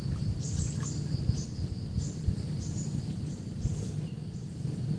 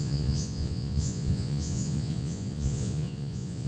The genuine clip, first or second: first